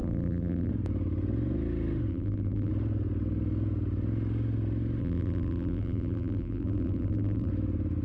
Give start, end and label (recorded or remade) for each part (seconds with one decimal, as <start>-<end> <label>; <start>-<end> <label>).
0.0-0.7 remade; 0.7-2.1 recorded; 2.1-2.7 remade; 2.7-5.0 recorded; 5.0-7.5 remade; 7.5-8.0 recorded